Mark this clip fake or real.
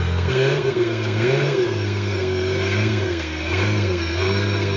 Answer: fake